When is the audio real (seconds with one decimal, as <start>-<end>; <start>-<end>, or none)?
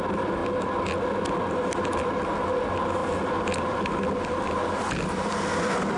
0.0-6.0